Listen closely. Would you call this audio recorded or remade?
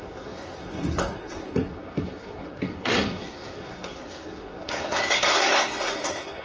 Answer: remade